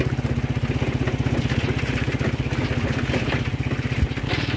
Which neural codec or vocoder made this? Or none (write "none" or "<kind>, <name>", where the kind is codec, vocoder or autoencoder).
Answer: none